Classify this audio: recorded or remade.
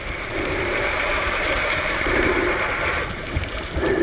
remade